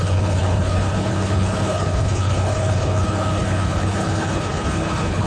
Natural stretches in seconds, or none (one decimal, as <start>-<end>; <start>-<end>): none